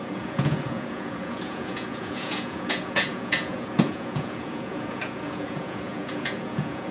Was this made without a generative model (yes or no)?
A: no